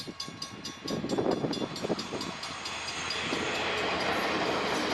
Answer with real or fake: real